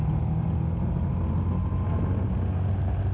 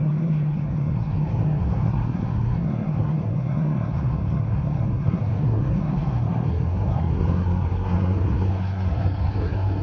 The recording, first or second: first